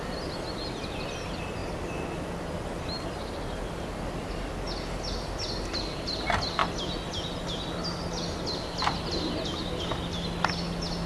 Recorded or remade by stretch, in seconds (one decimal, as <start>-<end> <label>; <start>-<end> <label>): 0.0-11.1 recorded